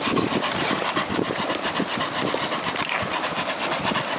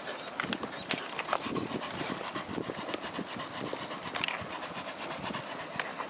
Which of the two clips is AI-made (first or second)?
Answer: first